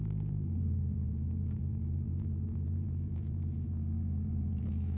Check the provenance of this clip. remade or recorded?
remade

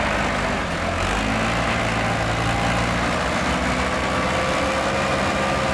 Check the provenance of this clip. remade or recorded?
recorded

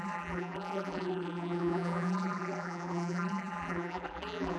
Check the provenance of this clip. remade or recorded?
remade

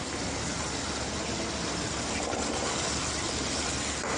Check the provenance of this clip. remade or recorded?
recorded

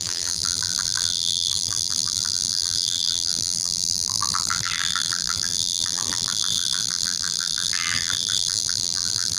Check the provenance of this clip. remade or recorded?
remade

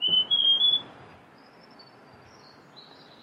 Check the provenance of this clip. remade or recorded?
recorded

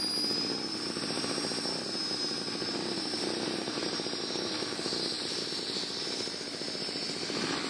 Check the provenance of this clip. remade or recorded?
recorded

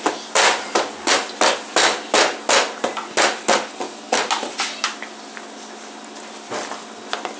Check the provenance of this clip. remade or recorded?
recorded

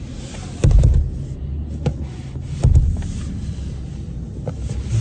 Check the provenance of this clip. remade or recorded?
recorded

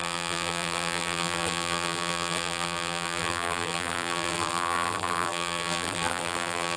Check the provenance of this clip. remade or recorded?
remade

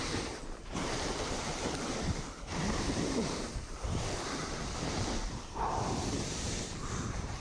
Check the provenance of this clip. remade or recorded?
remade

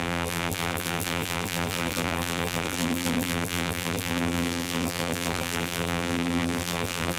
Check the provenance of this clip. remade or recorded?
remade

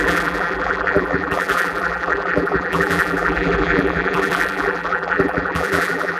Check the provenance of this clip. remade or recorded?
remade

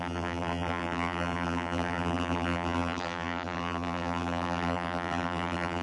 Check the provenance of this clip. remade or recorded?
remade